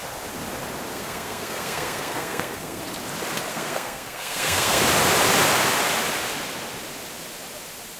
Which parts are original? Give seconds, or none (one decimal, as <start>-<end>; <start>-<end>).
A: 0.0-0.9; 2.8-3.5; 4.8-8.0